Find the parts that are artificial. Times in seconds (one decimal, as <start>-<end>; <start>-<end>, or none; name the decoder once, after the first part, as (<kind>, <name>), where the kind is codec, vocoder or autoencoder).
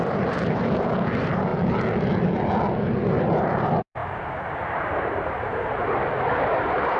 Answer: 0.0-1.5 (vocoder, BigVGAN v2); 3.2-7.0